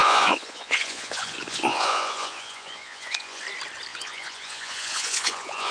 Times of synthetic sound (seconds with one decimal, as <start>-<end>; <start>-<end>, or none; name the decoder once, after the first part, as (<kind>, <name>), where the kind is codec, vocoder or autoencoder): 0.0-3.4 (vocoder, Vocos); 3.9-5.7